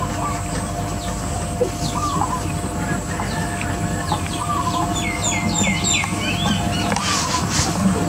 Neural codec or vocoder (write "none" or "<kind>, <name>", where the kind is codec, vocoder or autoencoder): none